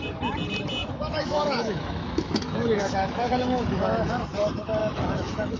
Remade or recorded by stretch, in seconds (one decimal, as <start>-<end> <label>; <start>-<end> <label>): 0.0-0.8 recorded; 0.8-4.2 remade; 4.2-4.8 recorded; 4.8-5.6 remade